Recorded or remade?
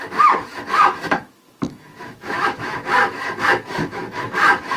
remade